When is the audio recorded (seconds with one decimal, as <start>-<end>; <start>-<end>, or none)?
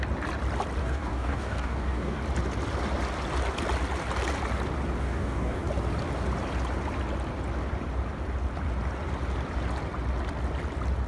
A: 0.0-0.8; 2.2-5.0; 5.6-11.1